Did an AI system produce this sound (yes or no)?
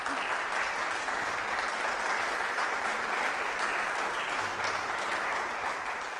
no